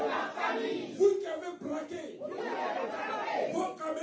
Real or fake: real